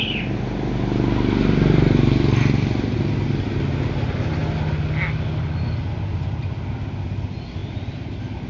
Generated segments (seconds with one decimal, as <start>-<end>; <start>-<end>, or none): none